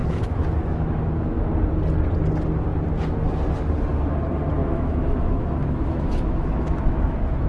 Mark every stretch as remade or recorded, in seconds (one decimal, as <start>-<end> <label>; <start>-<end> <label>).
0.0-1.5 remade; 1.5-4.6 recorded; 4.6-7.5 remade